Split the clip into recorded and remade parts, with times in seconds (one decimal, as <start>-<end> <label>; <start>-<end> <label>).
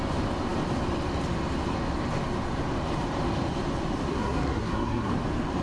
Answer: 0.0-4.1 recorded; 4.1-5.1 remade; 5.1-5.6 recorded